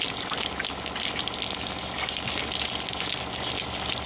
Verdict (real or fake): real